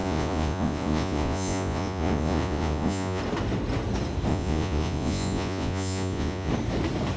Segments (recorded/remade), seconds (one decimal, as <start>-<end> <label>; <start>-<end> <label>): 0.0-3.2 remade; 3.2-4.3 recorded; 4.3-6.5 remade; 6.5-7.2 recorded